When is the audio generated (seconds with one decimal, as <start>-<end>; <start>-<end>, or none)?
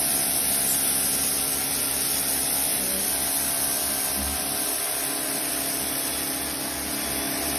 none